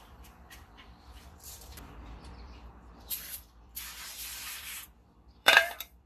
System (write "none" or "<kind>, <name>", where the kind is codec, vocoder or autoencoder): vocoder, BigVGAN v2